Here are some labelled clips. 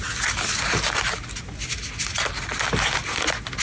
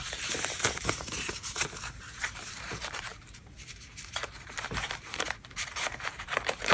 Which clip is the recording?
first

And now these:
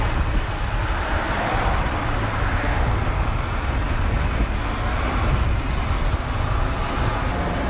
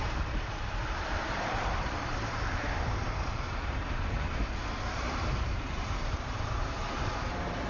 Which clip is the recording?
first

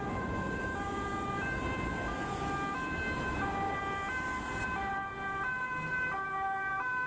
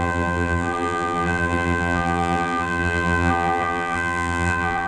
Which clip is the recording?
first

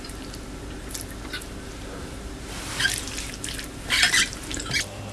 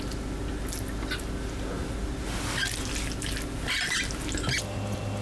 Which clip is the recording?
second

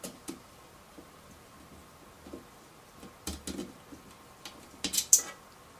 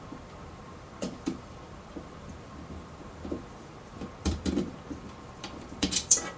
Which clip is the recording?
first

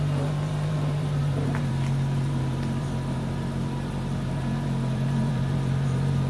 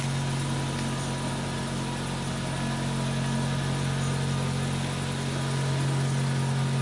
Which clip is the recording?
second